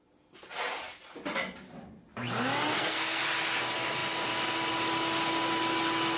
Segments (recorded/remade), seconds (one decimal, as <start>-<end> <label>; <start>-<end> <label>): 0.0-2.7 recorded; 2.7-3.2 remade; 3.2-6.2 recorded